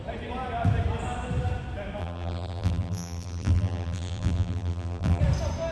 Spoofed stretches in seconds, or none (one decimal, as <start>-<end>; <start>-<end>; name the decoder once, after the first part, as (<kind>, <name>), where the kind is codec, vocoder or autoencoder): 2.0-5.2 (vocoder, BigVGAN v2)